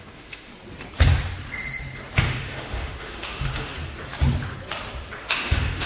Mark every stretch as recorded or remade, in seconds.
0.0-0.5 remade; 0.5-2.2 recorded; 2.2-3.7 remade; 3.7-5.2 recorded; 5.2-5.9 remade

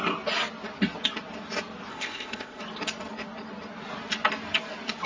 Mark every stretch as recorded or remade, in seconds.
0.0-1.9 recorded; 1.9-2.6 remade; 2.6-5.1 recorded

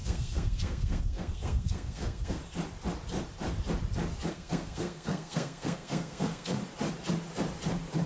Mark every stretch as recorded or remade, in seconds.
0.0-2.4 remade; 2.4-4.3 recorded; 4.3-6.6 remade; 6.6-8.1 recorded

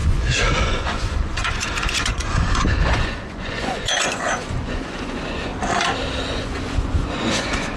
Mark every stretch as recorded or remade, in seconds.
0.0-5.5 remade; 5.5-6.2 recorded; 6.2-7.8 remade

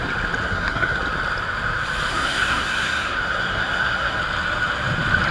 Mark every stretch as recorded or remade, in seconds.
0.0-0.4 recorded; 0.4-1.0 remade; 1.0-2.1 recorded; 2.1-4.2 remade; 4.2-5.3 recorded

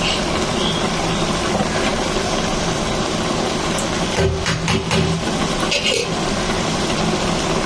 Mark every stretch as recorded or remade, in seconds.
0.0-7.7 recorded

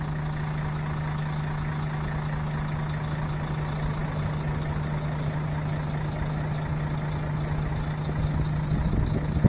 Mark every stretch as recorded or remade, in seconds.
0.0-9.5 recorded

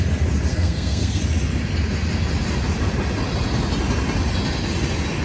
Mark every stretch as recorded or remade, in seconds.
0.0-0.5 recorded; 0.5-1.2 remade; 1.2-5.2 recorded